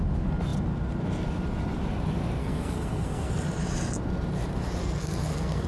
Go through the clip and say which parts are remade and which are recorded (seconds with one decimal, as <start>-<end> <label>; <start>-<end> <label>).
0.0-2.4 recorded; 2.4-3.3 remade; 3.3-4.8 recorded; 4.8-5.7 remade